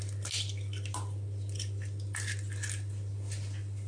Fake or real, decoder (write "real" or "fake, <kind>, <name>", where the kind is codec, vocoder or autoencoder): real